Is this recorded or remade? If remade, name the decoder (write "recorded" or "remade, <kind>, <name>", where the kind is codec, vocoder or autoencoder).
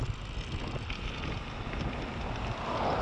recorded